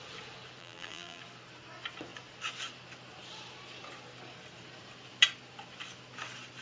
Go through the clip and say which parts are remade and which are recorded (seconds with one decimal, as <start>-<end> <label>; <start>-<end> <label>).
0.0-0.6 recorded; 0.6-1.2 remade; 1.2-6.6 recorded